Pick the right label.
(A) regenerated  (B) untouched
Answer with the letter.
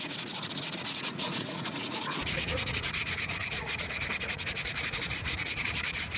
A